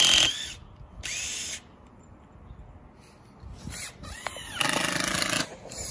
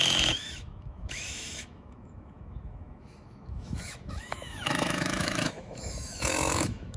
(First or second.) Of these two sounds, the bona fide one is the first